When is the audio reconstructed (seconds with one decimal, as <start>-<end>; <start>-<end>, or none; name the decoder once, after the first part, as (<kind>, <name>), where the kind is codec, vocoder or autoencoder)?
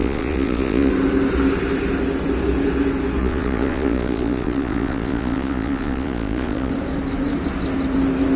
0.0-0.9 (vocoder, Vocos); 3.2-6.7